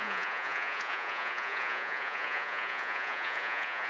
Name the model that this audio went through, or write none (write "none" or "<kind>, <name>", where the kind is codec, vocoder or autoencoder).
vocoder, Vocos